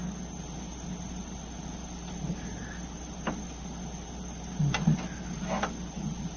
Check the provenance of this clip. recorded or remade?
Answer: recorded